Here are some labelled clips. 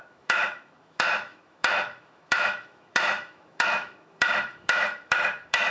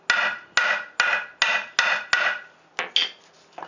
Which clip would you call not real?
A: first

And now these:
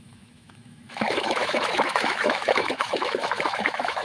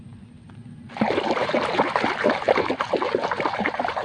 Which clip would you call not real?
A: first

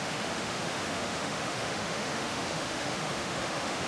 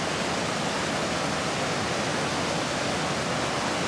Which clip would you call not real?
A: first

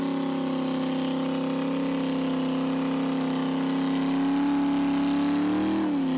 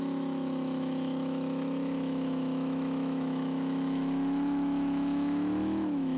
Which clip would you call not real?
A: second